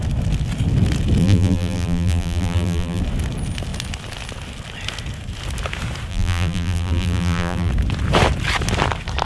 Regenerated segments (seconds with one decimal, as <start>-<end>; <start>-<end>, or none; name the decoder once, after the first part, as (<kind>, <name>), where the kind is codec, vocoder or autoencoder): 1.2-3.0 (vocoder, BigVGAN v2); 6.1-7.7